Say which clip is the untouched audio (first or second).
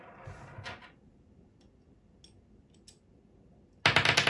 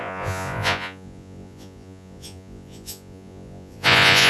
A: first